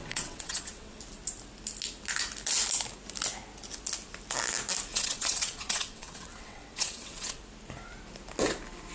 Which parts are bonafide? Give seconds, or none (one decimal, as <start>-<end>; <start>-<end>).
1.0-4.9; 7.4-8.9